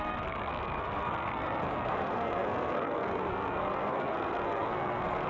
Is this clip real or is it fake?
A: fake